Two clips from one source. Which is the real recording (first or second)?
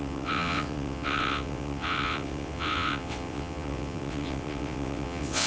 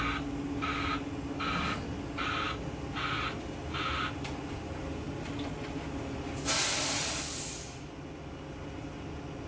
second